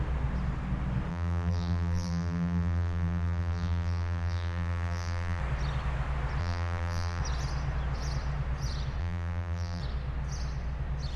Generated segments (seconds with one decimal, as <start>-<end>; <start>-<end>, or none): 1.1-5.4; 6.4-7.2; 9.0-9.8